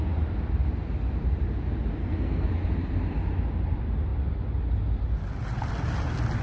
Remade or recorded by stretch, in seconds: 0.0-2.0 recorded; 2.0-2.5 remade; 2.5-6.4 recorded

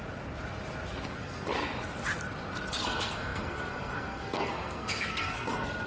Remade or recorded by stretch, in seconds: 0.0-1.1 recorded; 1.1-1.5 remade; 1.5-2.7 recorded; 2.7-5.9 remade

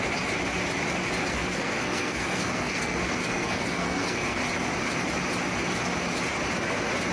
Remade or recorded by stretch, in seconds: 0.0-1.2 recorded; 1.2-4.4 remade; 4.4-7.1 recorded

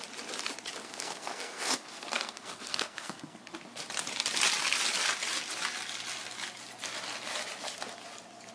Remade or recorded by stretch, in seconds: 0.0-0.8 recorded; 0.8-3.4 remade; 3.4-8.5 recorded

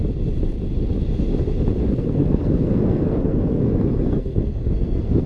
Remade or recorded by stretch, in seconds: 0.0-1.8 recorded; 1.8-5.3 remade